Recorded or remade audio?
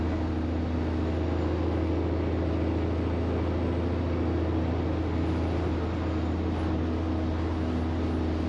recorded